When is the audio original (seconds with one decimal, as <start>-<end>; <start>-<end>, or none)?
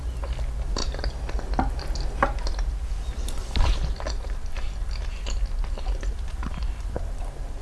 0.0-7.6